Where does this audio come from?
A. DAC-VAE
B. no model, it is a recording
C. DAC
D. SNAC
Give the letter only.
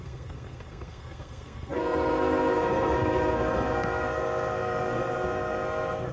D